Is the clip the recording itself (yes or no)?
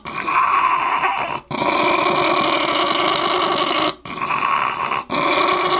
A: yes